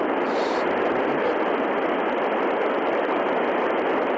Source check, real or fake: fake